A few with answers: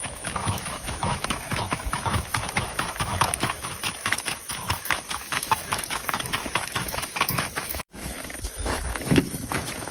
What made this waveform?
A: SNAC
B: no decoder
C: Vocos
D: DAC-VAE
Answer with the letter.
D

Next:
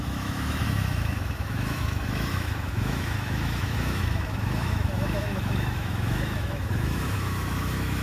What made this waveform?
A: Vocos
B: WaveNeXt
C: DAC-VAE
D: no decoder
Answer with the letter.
C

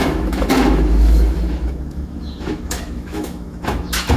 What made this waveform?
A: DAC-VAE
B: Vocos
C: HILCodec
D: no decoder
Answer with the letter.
A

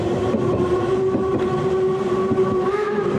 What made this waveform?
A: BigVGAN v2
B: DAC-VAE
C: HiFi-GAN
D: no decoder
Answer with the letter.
D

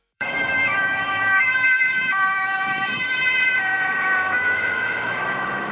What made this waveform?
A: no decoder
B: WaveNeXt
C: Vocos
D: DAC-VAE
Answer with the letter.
D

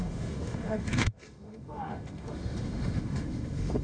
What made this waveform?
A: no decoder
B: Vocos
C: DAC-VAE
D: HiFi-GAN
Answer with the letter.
C